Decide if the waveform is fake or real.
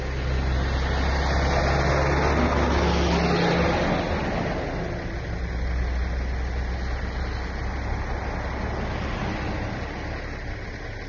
real